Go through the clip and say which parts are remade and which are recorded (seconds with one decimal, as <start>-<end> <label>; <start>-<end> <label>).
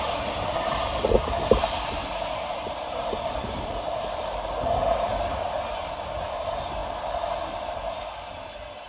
0.0-1.6 recorded; 1.6-4.8 remade; 4.8-8.9 recorded